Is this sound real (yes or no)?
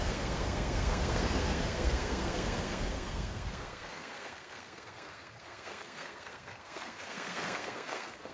no